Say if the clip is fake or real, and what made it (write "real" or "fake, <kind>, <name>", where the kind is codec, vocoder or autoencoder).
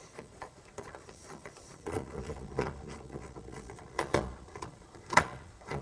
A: fake, vocoder, Vocos